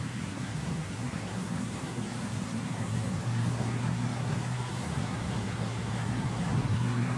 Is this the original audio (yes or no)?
no